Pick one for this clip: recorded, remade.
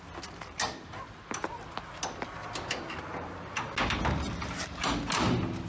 recorded